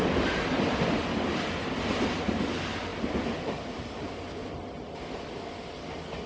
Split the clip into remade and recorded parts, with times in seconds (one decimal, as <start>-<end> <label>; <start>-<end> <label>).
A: 0.0-6.3 recorded